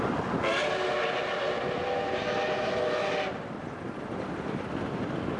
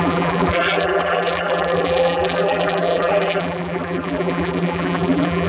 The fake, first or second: second